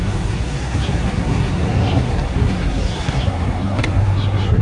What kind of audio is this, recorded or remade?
remade